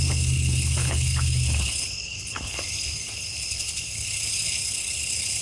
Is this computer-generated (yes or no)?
yes